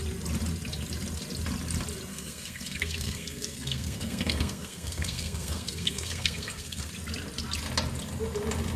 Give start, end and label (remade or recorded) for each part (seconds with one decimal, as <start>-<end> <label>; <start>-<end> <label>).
0.0-2.1 recorded; 2.1-6.9 remade; 6.9-8.8 recorded